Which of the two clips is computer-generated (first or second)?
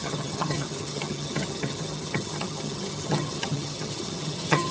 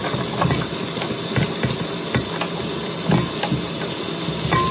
first